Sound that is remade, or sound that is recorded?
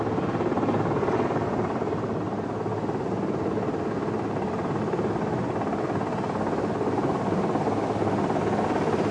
recorded